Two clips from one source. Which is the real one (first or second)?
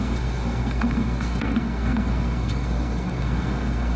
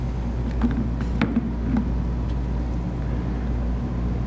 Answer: second